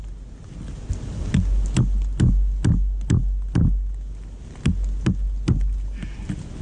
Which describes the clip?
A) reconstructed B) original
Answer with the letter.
B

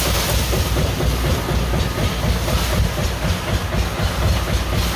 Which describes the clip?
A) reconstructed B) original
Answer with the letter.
B